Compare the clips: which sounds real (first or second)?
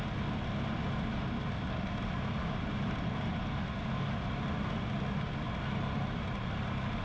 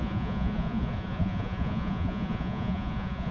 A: first